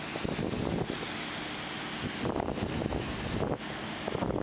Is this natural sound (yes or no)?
yes